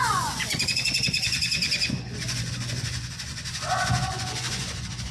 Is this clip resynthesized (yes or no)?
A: yes